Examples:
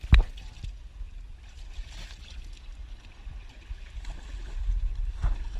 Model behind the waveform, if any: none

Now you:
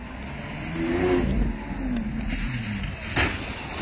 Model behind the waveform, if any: none